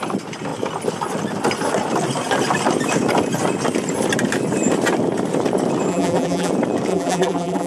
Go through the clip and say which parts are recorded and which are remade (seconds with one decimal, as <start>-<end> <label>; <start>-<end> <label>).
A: 0.0-5.9 recorded; 5.9-6.5 remade; 6.5-6.9 recorded; 6.9-7.7 remade